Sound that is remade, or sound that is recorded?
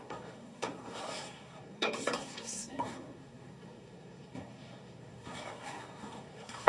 remade